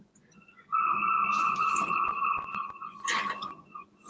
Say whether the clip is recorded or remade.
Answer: remade